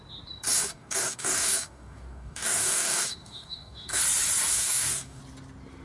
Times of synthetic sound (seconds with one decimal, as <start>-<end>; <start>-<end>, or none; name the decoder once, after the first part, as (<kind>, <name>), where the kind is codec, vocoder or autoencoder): 0.5-4.0 (codec, DAC); 4.5-5.2